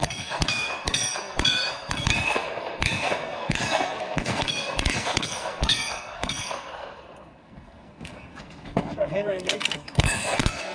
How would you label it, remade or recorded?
remade